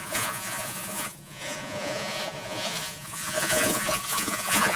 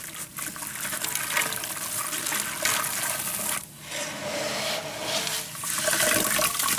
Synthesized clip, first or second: first